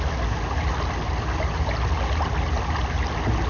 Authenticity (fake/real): real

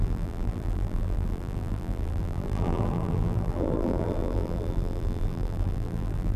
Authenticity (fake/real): fake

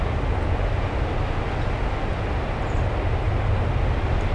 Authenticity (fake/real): real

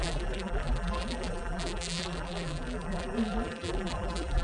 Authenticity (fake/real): fake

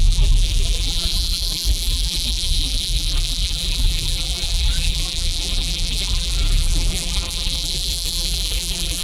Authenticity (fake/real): fake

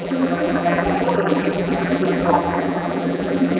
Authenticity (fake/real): fake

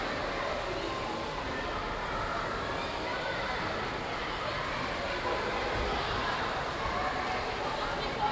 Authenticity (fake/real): real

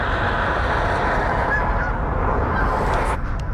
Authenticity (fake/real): real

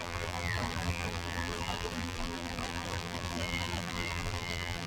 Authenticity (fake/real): fake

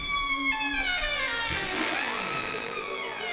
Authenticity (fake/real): fake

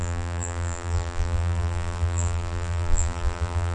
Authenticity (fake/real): fake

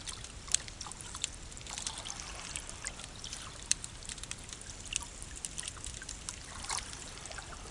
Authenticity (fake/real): real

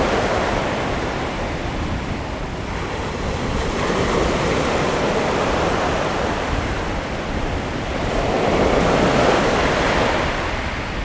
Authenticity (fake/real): fake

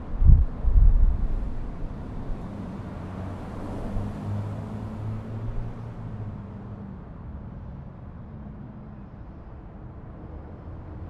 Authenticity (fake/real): real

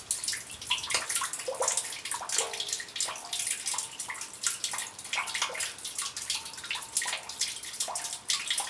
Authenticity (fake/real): real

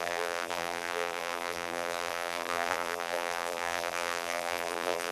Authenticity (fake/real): fake